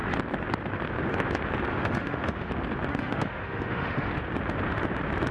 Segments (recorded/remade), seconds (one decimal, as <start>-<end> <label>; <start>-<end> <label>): 0.0-1.7 recorded; 1.7-2.5 remade; 2.5-2.9 recorded; 2.9-4.1 remade; 4.1-5.3 recorded